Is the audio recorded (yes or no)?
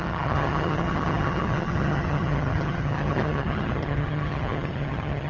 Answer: no